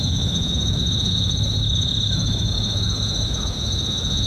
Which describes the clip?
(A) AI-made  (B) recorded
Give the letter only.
A